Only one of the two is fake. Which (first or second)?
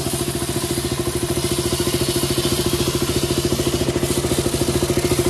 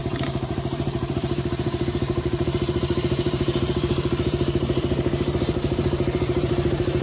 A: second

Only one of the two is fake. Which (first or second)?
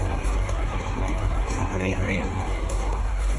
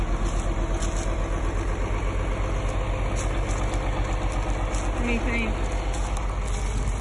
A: first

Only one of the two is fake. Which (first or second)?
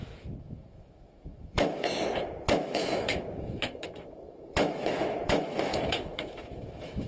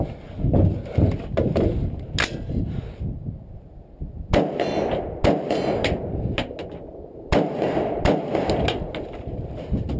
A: first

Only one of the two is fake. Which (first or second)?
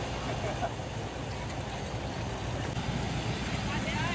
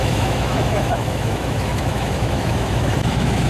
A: second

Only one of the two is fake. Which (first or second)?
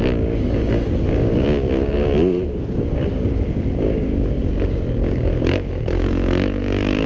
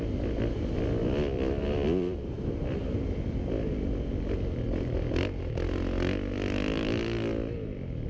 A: first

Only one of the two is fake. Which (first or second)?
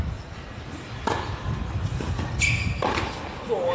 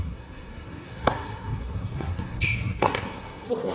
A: second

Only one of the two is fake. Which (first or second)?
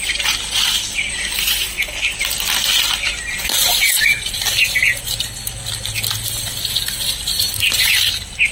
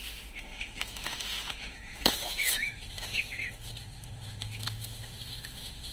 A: second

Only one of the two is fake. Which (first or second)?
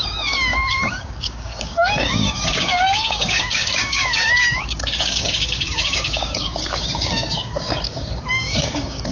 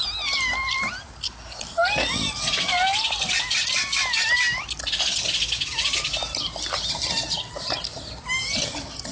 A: first